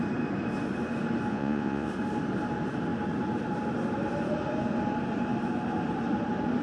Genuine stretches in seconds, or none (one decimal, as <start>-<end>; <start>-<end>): 0.0-1.3; 1.9-6.6